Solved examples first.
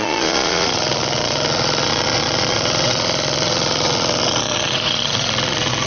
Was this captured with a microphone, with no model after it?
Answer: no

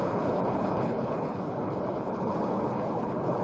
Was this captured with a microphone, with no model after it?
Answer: no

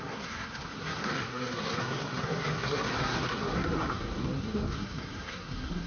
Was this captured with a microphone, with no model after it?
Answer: no